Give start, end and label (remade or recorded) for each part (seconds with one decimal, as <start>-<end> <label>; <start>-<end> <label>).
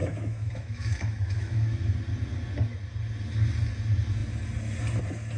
0.0-1.9 remade; 1.9-5.4 recorded